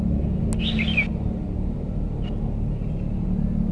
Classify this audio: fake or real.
real